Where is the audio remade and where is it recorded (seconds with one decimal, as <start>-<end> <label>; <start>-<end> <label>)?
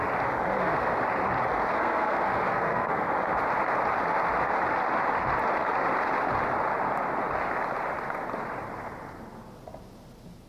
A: 0.0-0.5 recorded; 0.5-1.0 remade; 1.0-1.7 recorded; 1.7-3.1 remade; 3.1-10.5 recorded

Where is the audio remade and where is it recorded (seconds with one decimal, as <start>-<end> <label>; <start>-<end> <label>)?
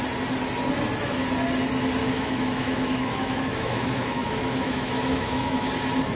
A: 0.0-2.0 recorded; 2.0-5.7 remade; 5.7-6.2 recorded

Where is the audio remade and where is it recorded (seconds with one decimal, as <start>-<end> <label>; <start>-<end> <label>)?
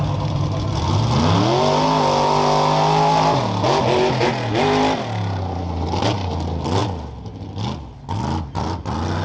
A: 0.0-9.2 recorded